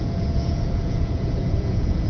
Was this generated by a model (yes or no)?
yes